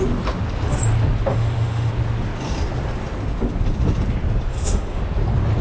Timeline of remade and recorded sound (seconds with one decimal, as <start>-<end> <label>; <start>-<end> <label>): 0.0-1.3 recorded; 1.3-1.9 remade; 1.9-4.5 recorded; 4.5-5.0 remade; 5.0-5.6 recorded